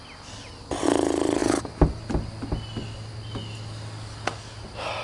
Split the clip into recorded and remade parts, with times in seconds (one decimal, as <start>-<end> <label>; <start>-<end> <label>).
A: 0.0-5.0 recorded

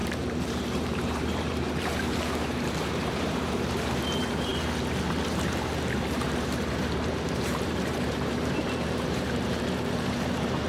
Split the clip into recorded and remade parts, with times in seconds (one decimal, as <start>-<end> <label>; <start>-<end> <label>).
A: 0.0-4.5 remade; 4.5-5.3 recorded; 5.3-10.7 remade

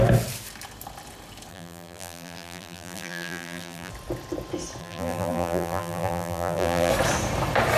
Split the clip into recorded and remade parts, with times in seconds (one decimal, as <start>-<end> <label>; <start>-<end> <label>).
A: 0.0-1.5 recorded; 1.5-3.9 remade; 3.9-4.8 recorded; 4.8-6.9 remade; 6.9-7.8 recorded

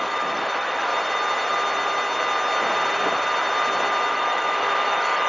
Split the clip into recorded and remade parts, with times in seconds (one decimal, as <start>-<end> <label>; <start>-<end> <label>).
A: 0.0-0.9 remade; 0.9-4.1 recorded; 4.1-5.3 remade

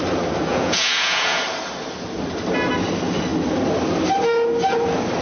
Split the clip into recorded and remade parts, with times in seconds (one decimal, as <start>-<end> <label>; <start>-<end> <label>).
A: 0.0-0.5 recorded; 0.5-1.4 remade; 1.4-5.2 recorded

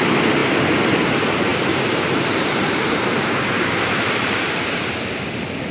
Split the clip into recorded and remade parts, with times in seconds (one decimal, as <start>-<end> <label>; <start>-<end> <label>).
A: 0.0-1.5 recorded; 1.5-4.9 remade; 4.9-5.7 recorded

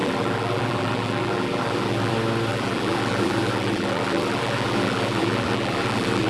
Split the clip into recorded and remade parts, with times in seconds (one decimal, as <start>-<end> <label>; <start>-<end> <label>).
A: 0.0-2.1 remade; 2.1-2.5 recorded; 2.5-6.3 remade

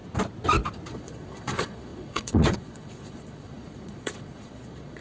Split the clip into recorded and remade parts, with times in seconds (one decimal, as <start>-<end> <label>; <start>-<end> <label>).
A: 0.0-0.9 recorded; 0.9-5.0 remade